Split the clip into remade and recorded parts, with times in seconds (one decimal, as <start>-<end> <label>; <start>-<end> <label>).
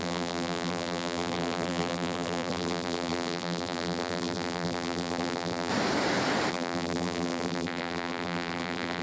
0.0-5.7 remade; 5.7-6.5 recorded; 6.5-9.0 remade